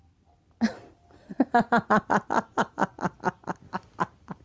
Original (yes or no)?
yes